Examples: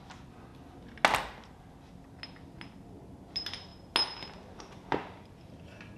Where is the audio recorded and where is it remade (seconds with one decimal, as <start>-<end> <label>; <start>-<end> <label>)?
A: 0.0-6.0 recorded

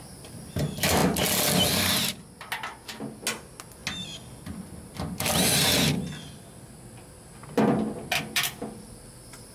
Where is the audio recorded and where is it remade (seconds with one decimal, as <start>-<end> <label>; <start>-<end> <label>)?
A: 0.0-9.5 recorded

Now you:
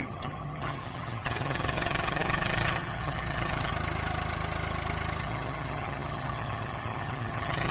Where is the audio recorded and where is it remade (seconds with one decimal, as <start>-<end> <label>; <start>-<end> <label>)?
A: 0.0-3.7 remade; 3.7-5.2 recorded; 5.2-7.7 remade

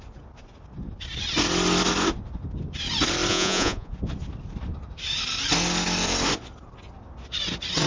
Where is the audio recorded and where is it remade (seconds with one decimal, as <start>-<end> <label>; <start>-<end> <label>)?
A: 0.0-3.3 recorded; 3.3-3.9 remade; 3.9-7.9 recorded

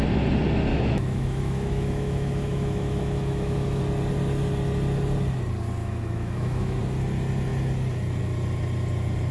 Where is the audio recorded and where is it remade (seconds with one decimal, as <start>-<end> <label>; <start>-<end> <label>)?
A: 0.0-0.7 recorded; 0.7-3.8 remade; 3.8-5.8 recorded; 5.8-6.8 remade; 6.8-9.3 recorded